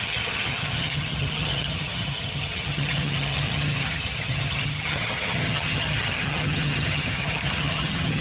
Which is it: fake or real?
fake